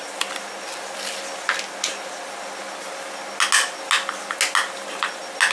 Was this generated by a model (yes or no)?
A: no